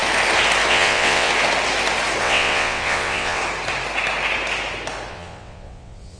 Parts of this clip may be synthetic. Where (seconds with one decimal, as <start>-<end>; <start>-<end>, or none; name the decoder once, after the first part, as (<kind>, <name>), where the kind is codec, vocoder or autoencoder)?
0.7-1.3 (vocoder, WaveNeXt); 2.2-3.4; 5.1-6.2